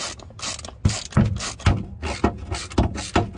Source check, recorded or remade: recorded